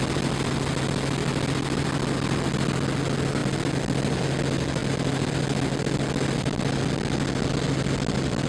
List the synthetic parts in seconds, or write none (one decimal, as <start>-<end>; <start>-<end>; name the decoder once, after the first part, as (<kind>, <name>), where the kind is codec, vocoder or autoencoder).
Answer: none